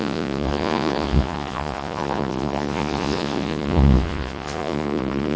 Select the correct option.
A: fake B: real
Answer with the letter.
A